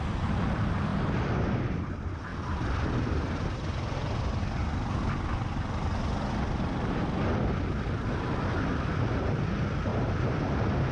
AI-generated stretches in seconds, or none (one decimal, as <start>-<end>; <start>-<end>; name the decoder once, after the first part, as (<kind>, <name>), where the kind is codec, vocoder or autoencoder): 9.9-10.9 (vocoder, BigVGAN v2)